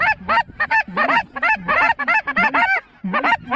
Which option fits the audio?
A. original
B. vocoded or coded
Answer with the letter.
A